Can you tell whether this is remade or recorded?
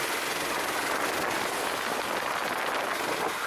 recorded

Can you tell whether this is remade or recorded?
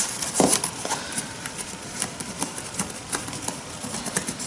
remade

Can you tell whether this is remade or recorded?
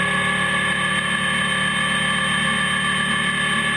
recorded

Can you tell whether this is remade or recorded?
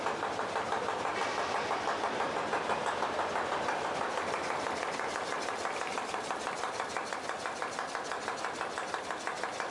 recorded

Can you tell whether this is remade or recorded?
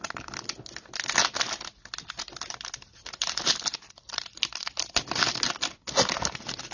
recorded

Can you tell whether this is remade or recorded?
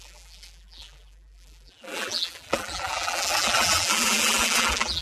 remade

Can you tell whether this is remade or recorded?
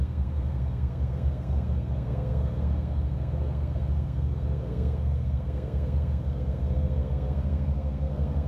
remade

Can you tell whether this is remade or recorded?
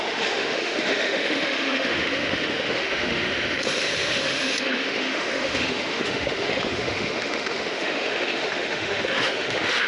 remade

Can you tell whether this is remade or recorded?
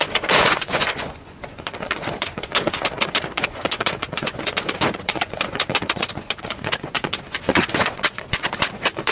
remade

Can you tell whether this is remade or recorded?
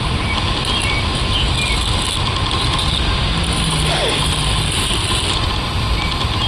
recorded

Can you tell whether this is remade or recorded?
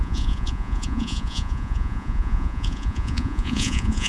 remade